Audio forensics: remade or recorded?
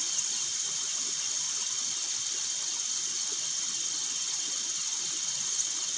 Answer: recorded